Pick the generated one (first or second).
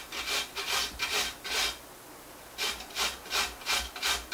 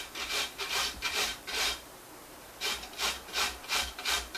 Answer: second